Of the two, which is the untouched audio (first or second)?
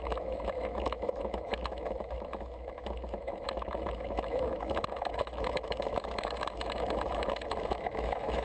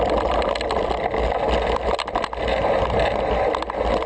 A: second